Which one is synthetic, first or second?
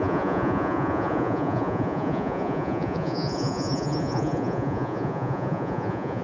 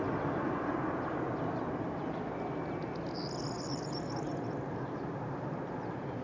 first